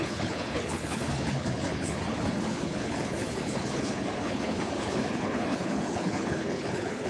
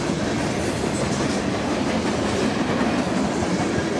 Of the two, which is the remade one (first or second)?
first